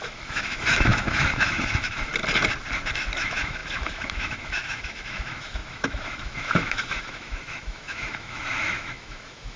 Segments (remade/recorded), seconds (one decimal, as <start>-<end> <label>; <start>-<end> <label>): 0.0-2.1 remade; 2.1-3.2 recorded; 3.2-9.6 remade